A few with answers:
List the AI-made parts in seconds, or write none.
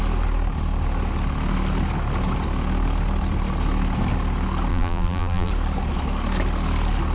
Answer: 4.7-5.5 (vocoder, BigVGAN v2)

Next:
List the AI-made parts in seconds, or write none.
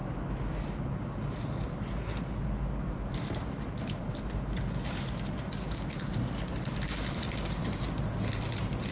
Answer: none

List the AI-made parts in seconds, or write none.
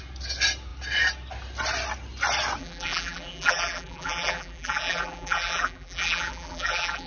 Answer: 2.6-7.1 (vocoder, BigVGAN v2)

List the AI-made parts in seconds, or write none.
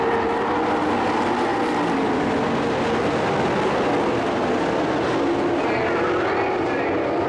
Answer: none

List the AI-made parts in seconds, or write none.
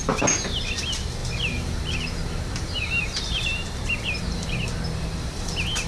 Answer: 1.2-4.5 (vocoder, BigVGAN v2)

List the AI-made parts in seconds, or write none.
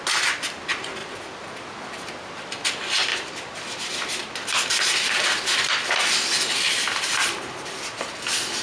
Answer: 1.0-1.6 (vocoder, BigVGAN v2); 3.1-8.1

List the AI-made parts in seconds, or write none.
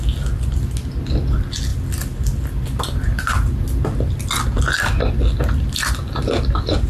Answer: none